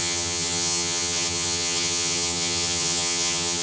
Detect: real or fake fake